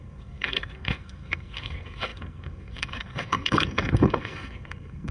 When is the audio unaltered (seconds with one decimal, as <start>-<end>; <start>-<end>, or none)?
none